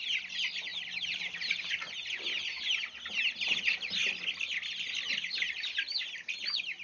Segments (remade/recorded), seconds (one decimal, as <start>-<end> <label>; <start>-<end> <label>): 0.0-0.7 recorded; 0.7-2.1 remade; 2.1-6.8 recorded